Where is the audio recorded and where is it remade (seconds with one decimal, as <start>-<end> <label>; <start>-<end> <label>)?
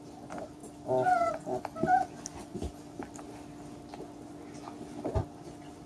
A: 0.0-5.9 recorded